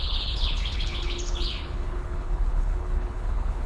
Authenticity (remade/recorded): remade